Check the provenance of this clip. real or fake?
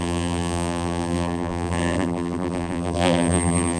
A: fake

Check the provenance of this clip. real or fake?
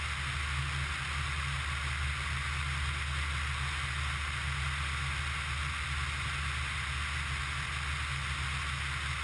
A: real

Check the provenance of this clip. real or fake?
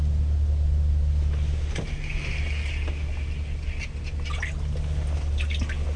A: real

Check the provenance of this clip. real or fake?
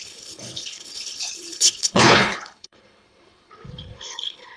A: fake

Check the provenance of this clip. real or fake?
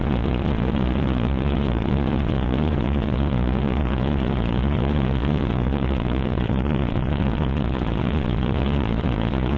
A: fake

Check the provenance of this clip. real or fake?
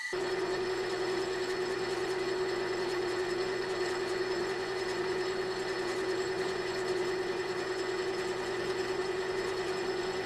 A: fake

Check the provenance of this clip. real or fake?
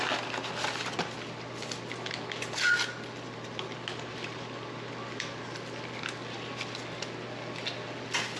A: real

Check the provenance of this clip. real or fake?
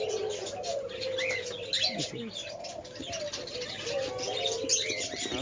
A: real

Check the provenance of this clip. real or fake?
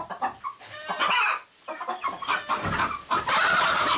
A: real